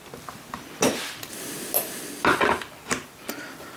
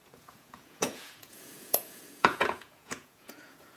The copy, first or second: second